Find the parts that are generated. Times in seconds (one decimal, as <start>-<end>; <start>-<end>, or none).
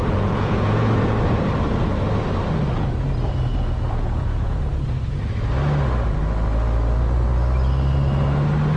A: 0.0-0.9; 3.5-4.6